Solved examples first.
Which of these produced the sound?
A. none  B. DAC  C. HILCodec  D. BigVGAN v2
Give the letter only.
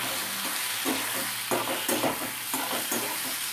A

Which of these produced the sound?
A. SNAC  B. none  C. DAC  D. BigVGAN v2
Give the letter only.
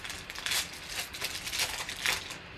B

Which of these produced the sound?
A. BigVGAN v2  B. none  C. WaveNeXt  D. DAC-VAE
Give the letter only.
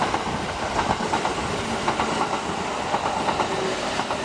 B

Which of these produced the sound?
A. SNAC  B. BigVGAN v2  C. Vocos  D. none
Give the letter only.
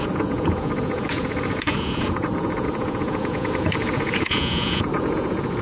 C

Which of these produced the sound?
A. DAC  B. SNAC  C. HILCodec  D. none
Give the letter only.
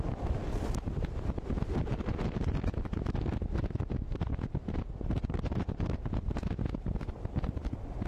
D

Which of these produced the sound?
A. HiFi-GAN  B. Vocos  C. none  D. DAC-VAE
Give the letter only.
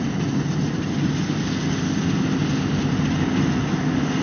C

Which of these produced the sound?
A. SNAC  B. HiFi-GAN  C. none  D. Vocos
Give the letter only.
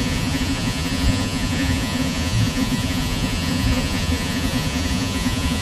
D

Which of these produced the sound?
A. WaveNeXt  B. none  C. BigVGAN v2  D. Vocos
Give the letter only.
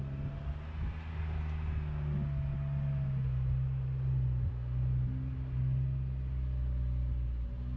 B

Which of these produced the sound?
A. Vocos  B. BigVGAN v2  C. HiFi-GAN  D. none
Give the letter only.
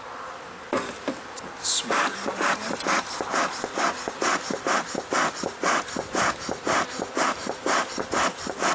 D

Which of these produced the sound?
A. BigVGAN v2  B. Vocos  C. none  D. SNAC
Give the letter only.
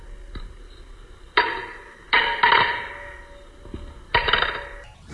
C